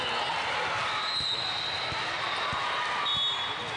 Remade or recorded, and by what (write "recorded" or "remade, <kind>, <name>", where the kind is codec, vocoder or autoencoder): recorded